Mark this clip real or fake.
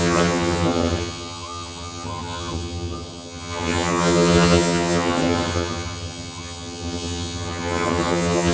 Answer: fake